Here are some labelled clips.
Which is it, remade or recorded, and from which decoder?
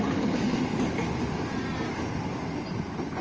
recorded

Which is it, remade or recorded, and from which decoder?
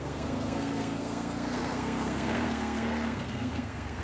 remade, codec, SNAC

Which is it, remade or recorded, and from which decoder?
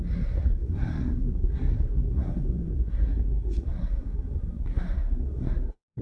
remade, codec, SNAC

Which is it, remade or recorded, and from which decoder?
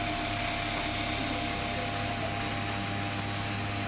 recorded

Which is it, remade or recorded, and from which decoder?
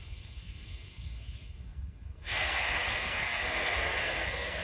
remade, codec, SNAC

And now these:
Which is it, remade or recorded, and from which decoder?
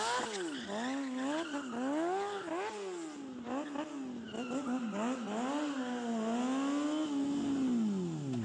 recorded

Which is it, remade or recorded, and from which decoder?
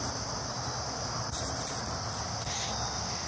recorded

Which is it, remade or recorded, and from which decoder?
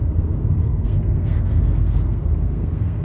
remade, codec, SNAC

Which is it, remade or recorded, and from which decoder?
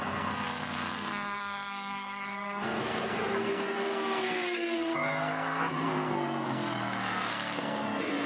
remade, codec, SNAC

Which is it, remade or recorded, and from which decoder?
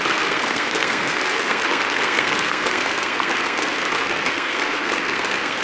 remade, codec, SNAC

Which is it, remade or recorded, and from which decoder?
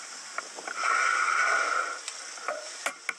recorded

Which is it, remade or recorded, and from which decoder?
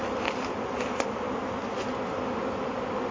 recorded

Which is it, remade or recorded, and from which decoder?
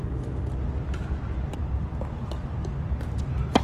recorded